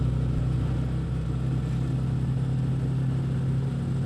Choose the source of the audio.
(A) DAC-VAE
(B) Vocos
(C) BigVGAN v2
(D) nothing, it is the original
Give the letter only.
D